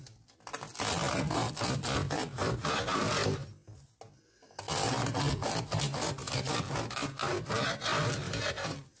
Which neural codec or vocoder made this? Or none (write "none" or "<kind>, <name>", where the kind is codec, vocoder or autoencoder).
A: none